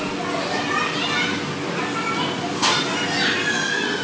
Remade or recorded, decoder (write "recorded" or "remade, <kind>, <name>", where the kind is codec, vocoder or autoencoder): recorded